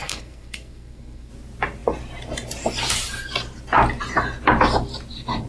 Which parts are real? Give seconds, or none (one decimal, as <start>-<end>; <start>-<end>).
1.3-5.5